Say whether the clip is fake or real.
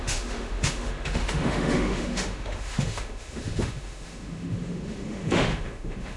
fake